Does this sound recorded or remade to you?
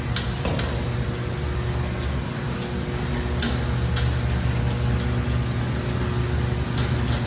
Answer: recorded